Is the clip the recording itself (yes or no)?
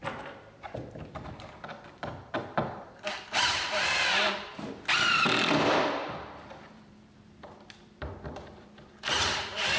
no